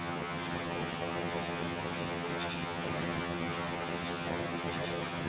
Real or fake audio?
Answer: fake